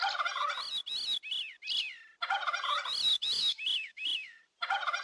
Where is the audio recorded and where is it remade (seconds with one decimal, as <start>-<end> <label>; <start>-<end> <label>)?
0.0-3.1 recorded; 3.1-4.4 remade; 4.4-5.0 recorded